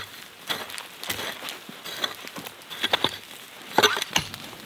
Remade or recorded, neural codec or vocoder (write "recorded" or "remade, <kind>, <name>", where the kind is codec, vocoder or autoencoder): recorded